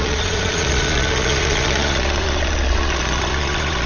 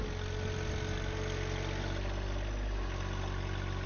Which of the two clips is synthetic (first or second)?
first